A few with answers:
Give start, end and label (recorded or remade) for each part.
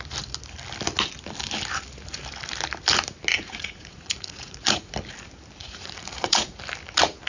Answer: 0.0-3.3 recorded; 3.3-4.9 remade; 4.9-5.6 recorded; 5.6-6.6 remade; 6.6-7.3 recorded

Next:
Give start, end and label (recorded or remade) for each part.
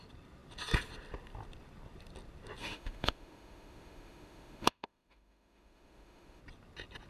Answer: 0.0-2.6 recorded; 2.6-6.4 remade; 6.4-7.1 recorded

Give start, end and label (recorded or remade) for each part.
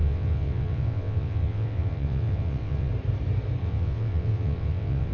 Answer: 0.0-2.9 remade; 2.9-3.6 recorded; 3.6-5.1 remade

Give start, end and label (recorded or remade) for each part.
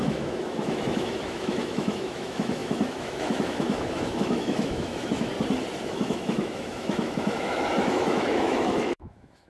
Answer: 0.0-5.3 remade; 5.3-5.8 recorded; 5.8-9.5 remade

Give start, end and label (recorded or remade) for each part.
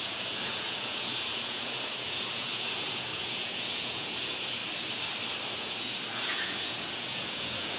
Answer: 0.0-4.6 remade; 4.6-5.5 recorded; 5.5-7.8 remade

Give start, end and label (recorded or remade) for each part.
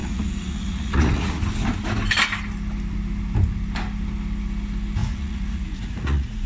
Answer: 0.0-1.4 remade; 1.4-5.0 recorded; 5.0-6.5 remade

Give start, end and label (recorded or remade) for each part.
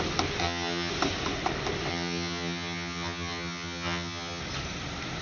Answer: 0.0-0.4 recorded; 0.4-0.9 remade; 0.9-1.9 recorded; 1.9-4.4 remade; 4.4-5.2 recorded